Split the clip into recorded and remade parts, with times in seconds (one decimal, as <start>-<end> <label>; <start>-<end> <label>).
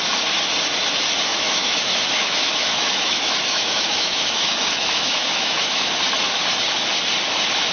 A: 0.0-1.3 recorded; 1.3-5.9 remade; 5.9-7.7 recorded